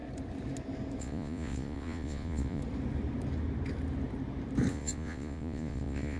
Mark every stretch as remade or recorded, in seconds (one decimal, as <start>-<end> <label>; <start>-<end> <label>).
0.0-1.0 recorded; 1.0-2.6 remade; 2.6-4.7 recorded; 4.7-6.2 remade